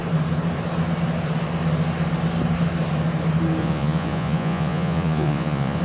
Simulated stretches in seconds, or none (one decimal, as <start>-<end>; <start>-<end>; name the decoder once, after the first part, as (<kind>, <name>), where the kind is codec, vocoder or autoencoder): 3.6-5.8 (vocoder, Vocos)